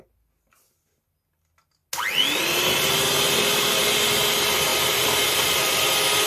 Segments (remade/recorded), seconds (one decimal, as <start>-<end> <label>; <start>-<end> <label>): 0.0-4.7 recorded; 4.7-5.7 remade; 5.7-6.3 recorded